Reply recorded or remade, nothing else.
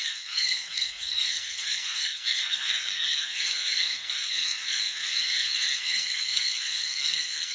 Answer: remade